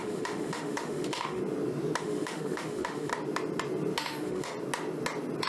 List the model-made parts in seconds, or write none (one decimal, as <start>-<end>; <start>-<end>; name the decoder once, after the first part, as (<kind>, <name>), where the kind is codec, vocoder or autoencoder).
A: 0.0-1.4 (autoencoder, DAC-VAE); 2.0-3.1; 4.0-4.5